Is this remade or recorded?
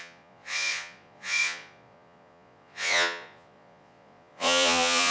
remade